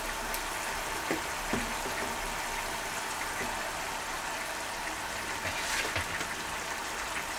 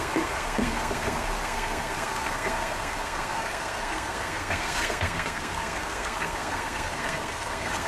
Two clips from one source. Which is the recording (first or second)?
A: first